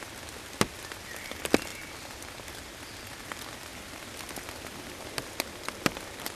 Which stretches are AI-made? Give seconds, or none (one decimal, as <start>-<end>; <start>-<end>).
none